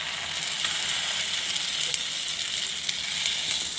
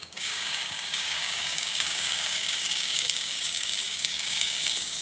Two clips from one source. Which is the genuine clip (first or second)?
first